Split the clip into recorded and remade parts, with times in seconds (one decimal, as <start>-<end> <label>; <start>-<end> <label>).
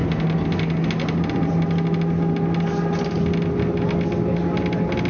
0.0-5.1 recorded